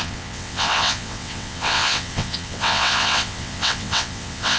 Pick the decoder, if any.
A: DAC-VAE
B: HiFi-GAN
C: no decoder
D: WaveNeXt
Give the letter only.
D